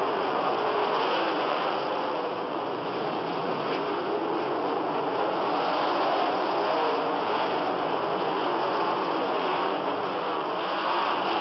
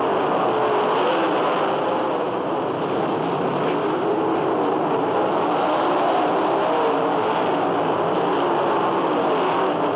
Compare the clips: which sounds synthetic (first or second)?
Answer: first